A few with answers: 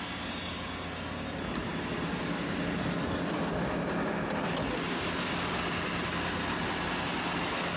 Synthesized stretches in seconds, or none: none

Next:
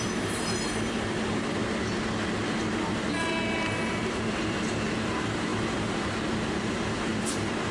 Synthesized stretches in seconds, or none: 0.0-1.6 (vocoder, BigVGAN v2); 2.7-7.7

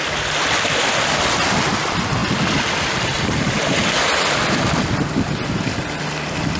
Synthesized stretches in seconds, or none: none

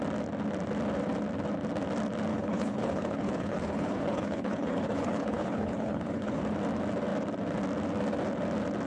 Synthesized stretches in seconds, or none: 2.3-6.4 (codec, HILCodec)

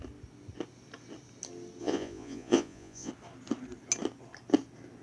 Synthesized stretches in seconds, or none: 1.8-3.1 (vocoder, Vocos)

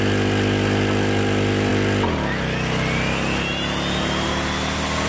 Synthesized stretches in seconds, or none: none

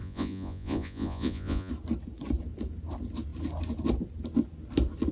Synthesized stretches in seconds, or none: 0.0-1.7 (vocoder, Vocos)